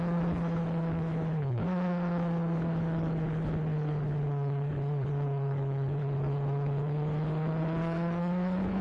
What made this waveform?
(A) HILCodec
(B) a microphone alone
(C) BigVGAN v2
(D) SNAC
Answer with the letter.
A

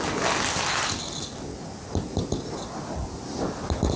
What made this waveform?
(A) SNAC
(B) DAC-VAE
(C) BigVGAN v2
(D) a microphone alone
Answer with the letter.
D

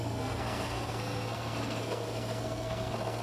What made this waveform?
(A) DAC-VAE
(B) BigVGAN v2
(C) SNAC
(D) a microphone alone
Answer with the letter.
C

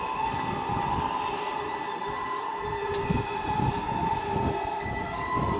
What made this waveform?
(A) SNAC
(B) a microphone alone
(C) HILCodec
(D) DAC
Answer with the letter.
B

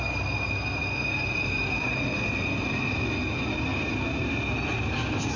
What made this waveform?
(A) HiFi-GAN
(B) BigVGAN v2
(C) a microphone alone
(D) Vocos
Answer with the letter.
C